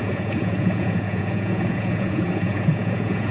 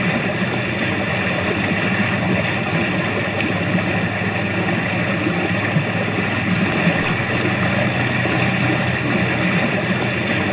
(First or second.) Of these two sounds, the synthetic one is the first